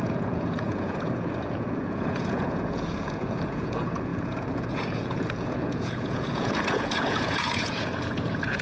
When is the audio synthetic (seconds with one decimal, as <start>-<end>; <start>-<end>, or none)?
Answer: 0.0-8.6